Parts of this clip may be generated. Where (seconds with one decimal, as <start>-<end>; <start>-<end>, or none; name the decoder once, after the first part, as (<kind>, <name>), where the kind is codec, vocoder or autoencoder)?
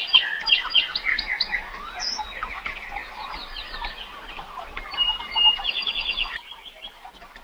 1.1-1.9 (codec, DAC)